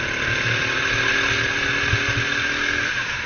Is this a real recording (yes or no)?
yes